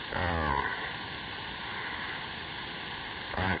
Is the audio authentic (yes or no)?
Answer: yes